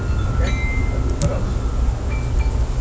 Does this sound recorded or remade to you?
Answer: recorded